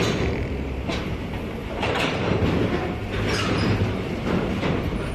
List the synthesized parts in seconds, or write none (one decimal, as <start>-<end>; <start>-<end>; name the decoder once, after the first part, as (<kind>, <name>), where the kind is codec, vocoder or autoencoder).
1.6-5.1 (vocoder, BigVGAN v2)